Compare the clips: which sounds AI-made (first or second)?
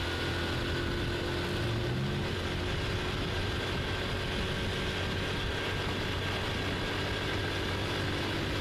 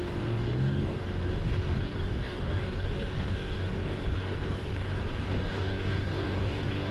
second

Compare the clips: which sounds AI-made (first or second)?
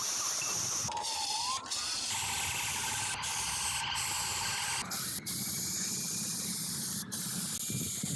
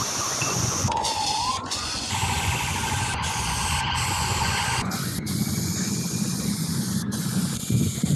second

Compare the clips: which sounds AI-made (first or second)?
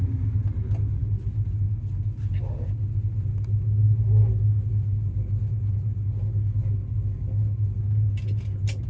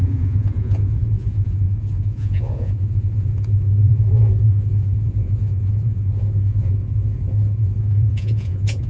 second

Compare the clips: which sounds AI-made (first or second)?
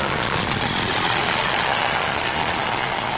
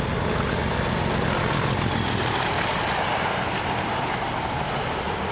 first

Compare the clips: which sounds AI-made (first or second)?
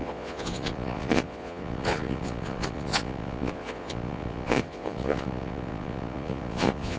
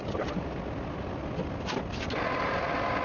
first